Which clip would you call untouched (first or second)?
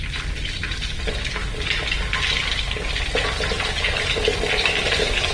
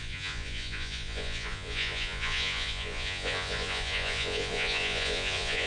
first